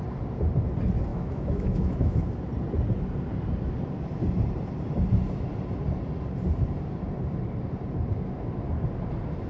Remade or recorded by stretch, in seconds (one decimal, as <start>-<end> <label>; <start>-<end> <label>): 0.0-1.1 recorded; 1.1-2.2 remade; 2.2-9.5 recorded